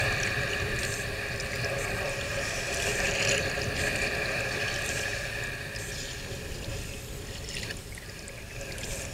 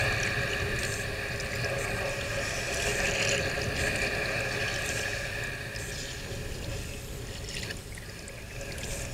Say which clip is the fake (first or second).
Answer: first